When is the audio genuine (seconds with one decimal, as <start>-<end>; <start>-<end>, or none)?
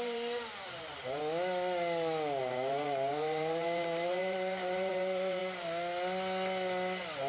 1.2-2.4; 5.4-7.3